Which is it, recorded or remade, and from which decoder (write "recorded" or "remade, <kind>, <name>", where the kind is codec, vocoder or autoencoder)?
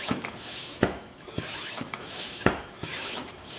remade, autoencoder, DAC-VAE